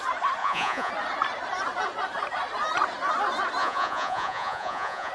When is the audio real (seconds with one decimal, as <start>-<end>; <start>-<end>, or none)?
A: 0.0-0.4; 0.9-3.6